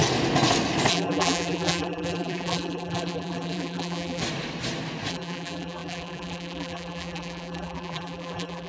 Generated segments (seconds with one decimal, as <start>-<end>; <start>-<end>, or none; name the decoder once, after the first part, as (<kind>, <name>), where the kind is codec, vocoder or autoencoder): 0.9-4.2 (vocoder, BigVGAN v2); 5.1-8.7